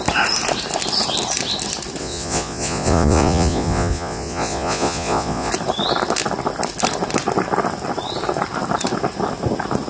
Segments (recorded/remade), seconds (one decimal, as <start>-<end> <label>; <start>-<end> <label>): 0.0-2.0 recorded; 2.0-5.5 remade; 5.5-9.9 recorded